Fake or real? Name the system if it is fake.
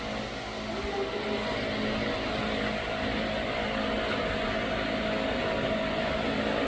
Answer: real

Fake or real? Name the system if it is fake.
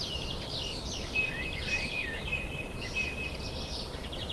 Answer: real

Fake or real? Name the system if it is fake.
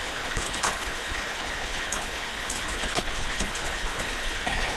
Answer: fake, codec, HILCodec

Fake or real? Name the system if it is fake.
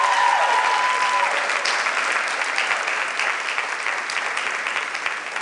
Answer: real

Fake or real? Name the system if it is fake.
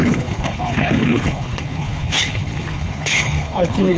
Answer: fake, codec, HILCodec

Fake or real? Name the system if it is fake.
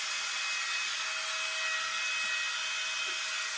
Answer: real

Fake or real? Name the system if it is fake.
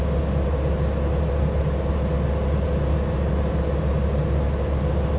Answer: real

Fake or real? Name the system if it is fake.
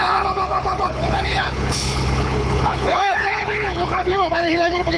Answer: fake, codec, HILCodec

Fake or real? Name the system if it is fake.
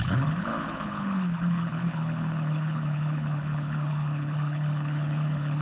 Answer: fake, codec, HILCodec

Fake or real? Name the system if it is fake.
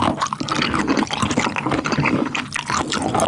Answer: real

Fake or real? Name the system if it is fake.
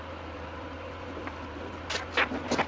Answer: real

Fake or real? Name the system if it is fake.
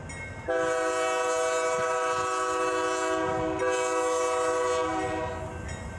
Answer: real